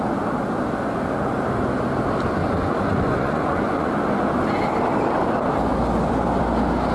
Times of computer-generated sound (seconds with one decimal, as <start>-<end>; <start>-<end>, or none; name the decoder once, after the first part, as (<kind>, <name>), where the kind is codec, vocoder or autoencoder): 2.4-3.9 (vocoder, Vocos)

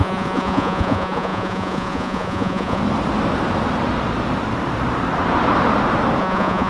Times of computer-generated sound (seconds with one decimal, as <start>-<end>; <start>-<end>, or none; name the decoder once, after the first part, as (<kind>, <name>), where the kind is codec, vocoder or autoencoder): 0.0-2.8 (vocoder, Vocos); 6.2-6.7

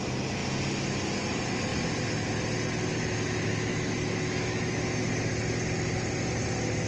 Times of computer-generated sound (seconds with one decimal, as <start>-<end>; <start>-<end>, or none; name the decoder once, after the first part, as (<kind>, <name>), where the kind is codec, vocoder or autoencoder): 3.7-5.4 (autoencoder, DAC-VAE)